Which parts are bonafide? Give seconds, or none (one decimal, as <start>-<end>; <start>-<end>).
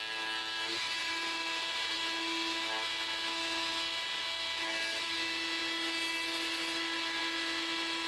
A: 0.0-1.0; 1.9-8.1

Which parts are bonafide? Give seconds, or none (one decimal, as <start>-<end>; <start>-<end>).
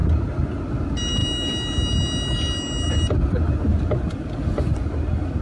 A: 0.0-5.4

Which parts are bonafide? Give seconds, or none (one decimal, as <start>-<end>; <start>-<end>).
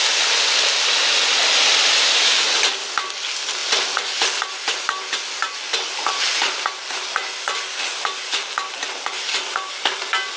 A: 0.0-10.4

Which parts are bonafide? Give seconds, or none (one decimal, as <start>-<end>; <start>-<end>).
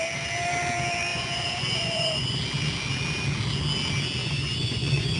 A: 0.0-1.1; 2.4-4.2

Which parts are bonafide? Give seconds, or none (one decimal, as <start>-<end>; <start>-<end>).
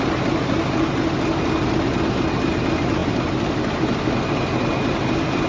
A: 0.0-3.0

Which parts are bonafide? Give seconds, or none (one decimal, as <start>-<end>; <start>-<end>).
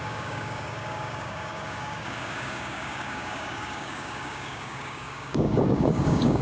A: none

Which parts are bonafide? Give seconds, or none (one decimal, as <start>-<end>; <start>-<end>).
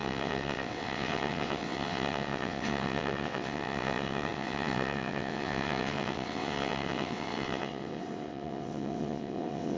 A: none